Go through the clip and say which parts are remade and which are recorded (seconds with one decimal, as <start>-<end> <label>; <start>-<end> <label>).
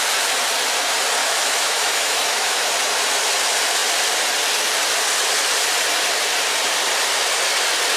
0.0-1.2 recorded; 1.2-2.7 remade; 2.7-8.0 recorded